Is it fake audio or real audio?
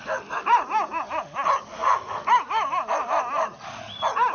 real